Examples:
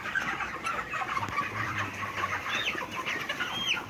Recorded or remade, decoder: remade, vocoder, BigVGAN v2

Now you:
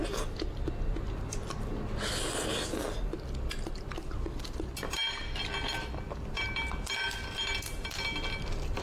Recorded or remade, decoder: recorded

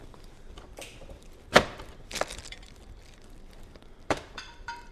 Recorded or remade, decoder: remade, vocoder, BigVGAN v2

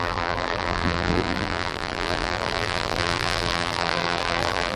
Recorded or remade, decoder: remade, vocoder, BigVGAN v2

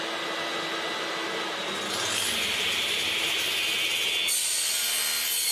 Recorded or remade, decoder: recorded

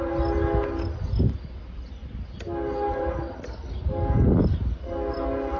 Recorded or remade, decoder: recorded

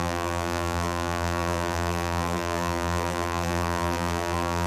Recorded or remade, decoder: remade, vocoder, BigVGAN v2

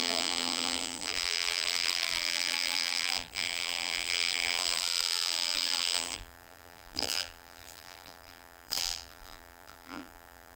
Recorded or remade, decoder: remade, vocoder, BigVGAN v2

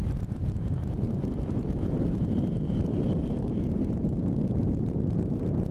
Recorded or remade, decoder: remade, vocoder, BigVGAN v2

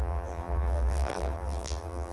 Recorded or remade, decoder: remade, vocoder, BigVGAN v2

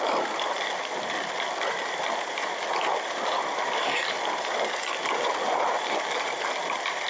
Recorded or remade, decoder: recorded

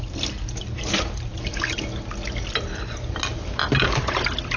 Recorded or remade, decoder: recorded